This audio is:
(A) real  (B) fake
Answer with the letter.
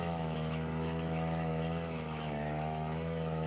B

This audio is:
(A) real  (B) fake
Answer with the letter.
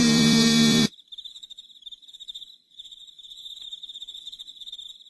B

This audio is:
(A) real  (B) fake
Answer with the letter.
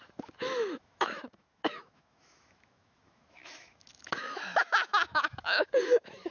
B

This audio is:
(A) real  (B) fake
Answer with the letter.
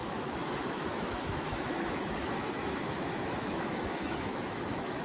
B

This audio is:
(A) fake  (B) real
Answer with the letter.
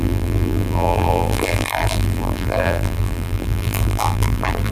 A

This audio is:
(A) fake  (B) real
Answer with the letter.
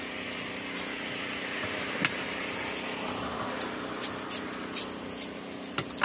B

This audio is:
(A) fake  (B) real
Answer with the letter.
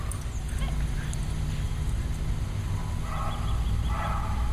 B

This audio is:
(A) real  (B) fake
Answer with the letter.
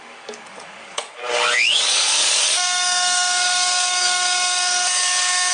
B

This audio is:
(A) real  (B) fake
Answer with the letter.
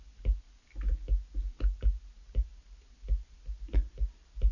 A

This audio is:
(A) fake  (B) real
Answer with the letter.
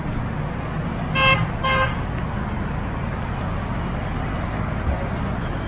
B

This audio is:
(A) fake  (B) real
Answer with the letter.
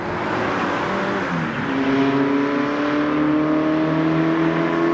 B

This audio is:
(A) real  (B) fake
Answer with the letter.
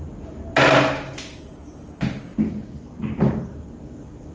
A